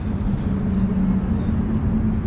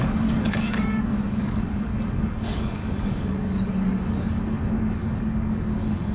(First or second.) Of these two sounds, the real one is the first